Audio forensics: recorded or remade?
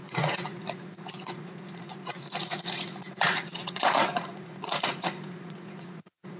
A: remade